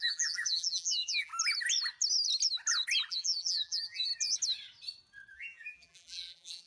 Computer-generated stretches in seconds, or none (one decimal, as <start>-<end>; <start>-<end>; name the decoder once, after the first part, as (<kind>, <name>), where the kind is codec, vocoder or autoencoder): 0.0-1.3 (vocoder, BigVGAN v2); 3.1-4.1; 5.3-6.7